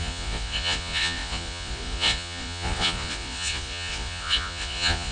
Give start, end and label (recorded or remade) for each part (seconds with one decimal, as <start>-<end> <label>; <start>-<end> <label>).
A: 0.0-5.1 remade